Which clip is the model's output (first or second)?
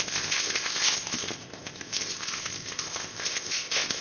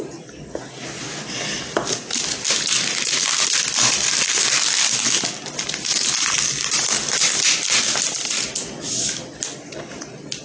first